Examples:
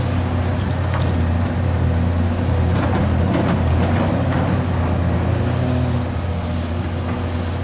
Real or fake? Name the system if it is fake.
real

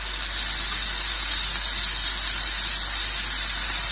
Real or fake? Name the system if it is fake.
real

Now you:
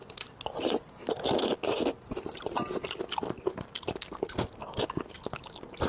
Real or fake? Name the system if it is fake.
real